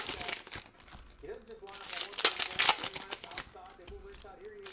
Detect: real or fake real